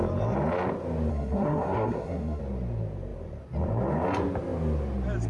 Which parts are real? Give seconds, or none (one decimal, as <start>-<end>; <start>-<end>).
0.0-1.1; 2.4-5.3